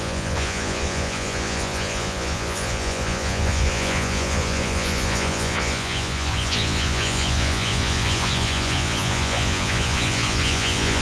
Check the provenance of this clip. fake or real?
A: fake